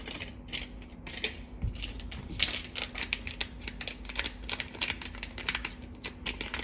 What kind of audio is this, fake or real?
real